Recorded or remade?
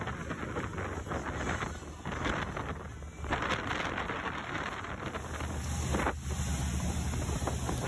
recorded